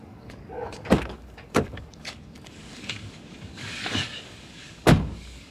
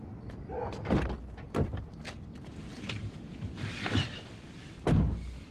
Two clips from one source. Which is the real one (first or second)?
second